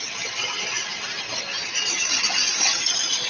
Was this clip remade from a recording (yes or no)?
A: no